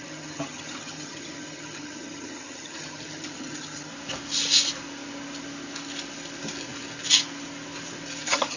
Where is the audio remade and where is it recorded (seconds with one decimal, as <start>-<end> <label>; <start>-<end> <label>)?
0.0-3.9 remade; 3.9-8.2 recorded; 8.2-8.6 remade